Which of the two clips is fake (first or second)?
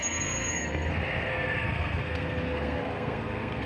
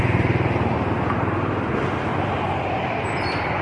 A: first